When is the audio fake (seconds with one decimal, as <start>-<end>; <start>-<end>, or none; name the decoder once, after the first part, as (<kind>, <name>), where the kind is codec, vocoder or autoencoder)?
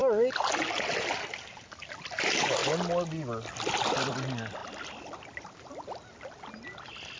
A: none